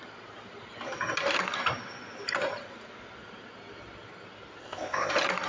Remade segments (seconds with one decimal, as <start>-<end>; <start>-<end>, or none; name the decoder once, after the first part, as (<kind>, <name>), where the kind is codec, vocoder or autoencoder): 4.6-5.1 (codec, ZipCodec)